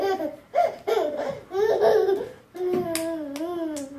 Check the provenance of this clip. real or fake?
real